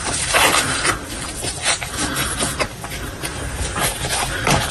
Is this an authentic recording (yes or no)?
no